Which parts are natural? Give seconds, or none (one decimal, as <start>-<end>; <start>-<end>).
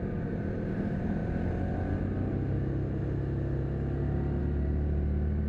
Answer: 1.2-4.4